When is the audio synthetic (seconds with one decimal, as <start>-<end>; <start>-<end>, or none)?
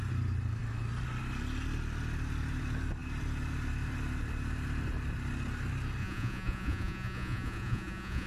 6.0-8.3